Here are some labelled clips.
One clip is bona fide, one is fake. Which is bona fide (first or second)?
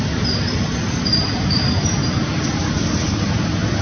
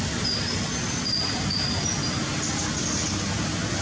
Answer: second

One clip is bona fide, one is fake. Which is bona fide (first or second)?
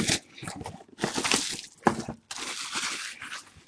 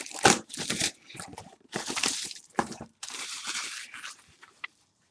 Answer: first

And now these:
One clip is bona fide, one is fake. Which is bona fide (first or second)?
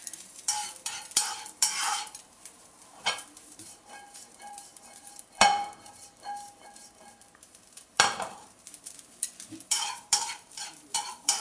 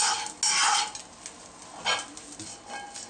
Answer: second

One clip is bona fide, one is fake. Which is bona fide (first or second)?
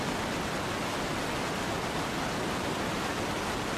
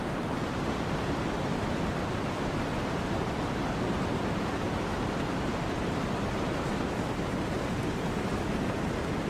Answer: first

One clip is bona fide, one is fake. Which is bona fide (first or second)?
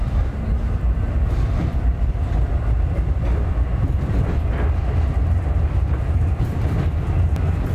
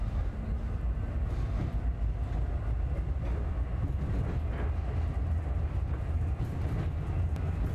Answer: second